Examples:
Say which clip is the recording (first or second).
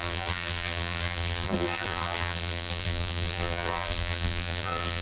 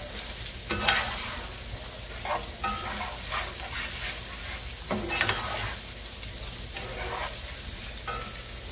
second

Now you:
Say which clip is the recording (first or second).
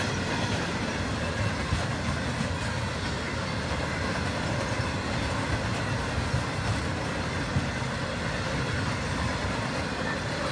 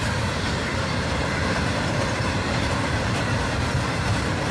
first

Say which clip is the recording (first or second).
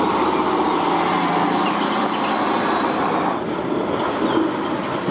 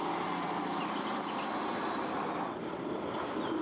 first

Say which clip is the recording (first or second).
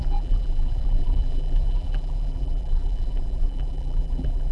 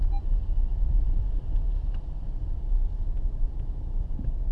second